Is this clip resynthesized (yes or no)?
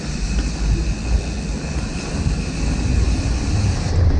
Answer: no